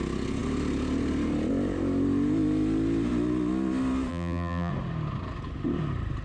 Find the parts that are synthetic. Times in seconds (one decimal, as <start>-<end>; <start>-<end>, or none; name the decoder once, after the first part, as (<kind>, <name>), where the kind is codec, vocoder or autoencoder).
4.1-4.7 (vocoder, BigVGAN v2)